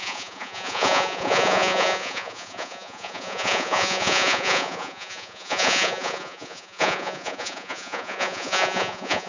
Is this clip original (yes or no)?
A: no